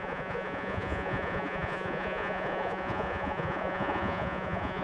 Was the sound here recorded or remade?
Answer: remade